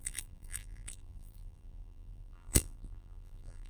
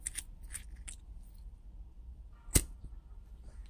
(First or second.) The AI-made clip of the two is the first